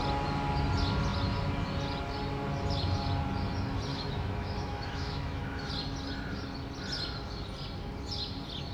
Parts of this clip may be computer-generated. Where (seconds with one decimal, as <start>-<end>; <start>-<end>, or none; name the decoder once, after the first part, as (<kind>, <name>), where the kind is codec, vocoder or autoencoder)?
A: 3.9-5.7 (autoencoder, DAC-VAE)